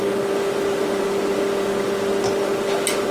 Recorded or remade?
recorded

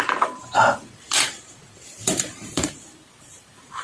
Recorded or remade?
remade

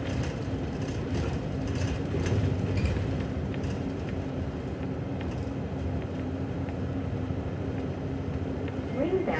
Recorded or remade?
remade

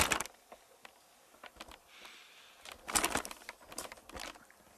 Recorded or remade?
recorded